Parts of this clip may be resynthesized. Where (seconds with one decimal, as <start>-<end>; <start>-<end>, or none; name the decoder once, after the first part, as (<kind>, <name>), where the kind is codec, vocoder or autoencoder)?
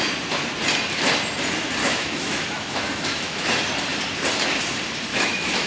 1.8-3.5 (autoencoder, DAC-VAE); 5.1-5.7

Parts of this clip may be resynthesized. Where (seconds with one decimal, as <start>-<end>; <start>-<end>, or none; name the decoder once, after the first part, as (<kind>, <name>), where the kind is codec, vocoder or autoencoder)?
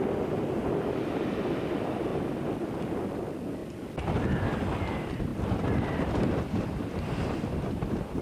0.0-2.1 (vocoder, BigVGAN v2); 2.7-8.2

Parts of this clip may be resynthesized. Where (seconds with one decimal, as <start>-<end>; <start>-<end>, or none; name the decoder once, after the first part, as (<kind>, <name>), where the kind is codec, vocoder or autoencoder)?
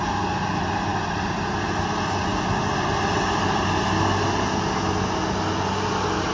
none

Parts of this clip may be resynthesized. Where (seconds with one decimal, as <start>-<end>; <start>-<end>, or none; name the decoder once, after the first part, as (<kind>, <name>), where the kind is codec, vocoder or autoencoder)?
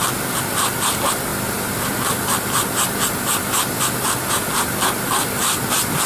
none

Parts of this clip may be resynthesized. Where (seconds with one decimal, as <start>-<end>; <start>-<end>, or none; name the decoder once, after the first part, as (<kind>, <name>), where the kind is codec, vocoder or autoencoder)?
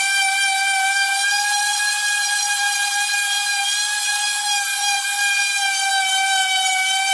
none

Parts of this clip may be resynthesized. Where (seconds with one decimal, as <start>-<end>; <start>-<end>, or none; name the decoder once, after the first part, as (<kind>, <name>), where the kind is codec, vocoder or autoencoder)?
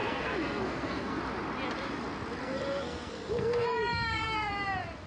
0.0-1.2 (codec, SNAC); 2.4-4.5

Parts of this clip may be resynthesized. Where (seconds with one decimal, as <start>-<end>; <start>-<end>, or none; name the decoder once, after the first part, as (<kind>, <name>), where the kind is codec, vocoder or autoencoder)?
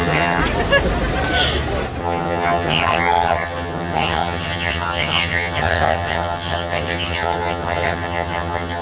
0.0-0.4 (vocoder, HiFi-GAN); 2.0-8.8